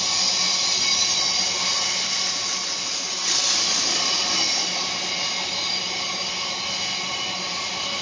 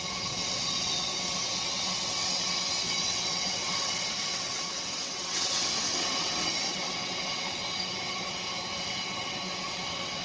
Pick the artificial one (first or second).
second